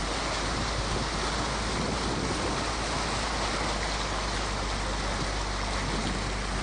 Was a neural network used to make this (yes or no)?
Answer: no